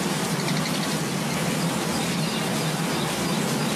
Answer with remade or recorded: recorded